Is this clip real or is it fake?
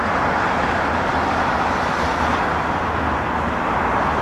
real